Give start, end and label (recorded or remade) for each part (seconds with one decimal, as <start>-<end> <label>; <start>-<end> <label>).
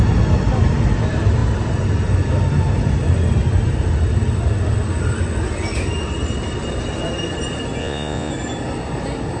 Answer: 0.0-7.8 recorded; 7.8-8.3 remade; 8.3-9.4 recorded